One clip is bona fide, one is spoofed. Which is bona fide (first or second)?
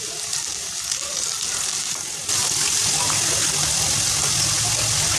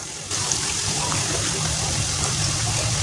first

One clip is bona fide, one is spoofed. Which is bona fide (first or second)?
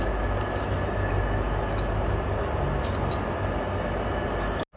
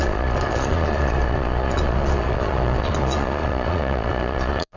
first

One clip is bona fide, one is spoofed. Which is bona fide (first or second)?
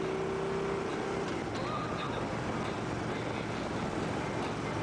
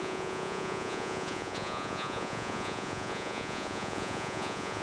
first